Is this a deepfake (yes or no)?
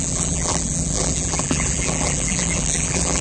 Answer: yes